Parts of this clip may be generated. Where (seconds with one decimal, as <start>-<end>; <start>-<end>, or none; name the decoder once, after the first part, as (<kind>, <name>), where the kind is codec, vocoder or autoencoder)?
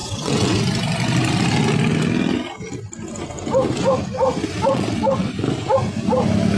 0.0-0.6 (vocoder, WaveNeXt); 4.7-5.3